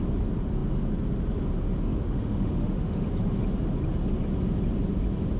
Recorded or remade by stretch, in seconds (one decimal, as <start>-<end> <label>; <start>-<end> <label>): 0.0-1.9 recorded; 1.9-3.0 remade; 3.0-5.4 recorded